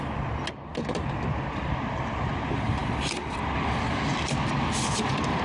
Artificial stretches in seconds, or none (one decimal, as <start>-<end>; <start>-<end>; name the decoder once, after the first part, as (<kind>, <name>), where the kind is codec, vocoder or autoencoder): 0.7-2.3 (vocoder, BigVGAN v2); 4.1-5.4